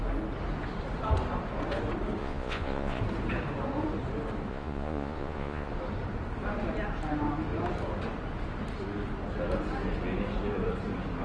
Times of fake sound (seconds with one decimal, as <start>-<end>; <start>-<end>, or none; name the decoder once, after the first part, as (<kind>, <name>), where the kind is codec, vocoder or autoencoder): 2.2-3.0 (vocoder, Vocos); 4.5-5.7